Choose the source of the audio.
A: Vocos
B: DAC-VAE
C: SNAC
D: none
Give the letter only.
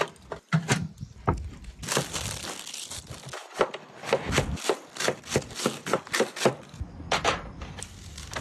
D